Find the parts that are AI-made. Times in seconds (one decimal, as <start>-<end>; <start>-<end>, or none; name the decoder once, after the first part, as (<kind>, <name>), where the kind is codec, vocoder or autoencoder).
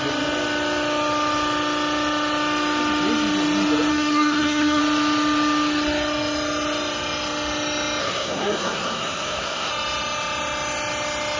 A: 3.9-4.8 (codec, SNAC); 8.0-9.7